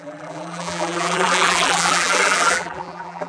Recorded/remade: remade